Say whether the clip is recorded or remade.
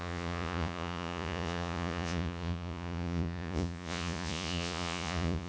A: remade